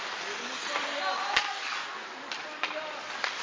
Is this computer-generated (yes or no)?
no